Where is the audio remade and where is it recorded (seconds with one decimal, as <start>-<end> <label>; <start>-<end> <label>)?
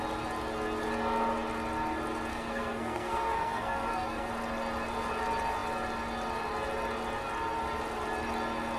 0.0-2.3 recorded; 2.3-4.3 remade; 4.3-8.8 recorded